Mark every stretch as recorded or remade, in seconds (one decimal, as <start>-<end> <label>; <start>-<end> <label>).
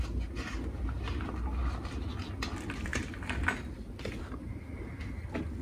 0.0-5.6 recorded